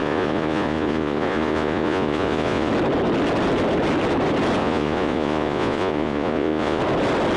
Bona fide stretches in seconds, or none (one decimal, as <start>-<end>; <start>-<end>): 2.7-4.6; 6.8-7.4